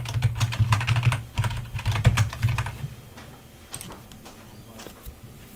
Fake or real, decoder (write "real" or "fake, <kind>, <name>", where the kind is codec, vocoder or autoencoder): real